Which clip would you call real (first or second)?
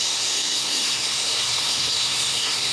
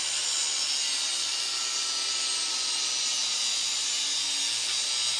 second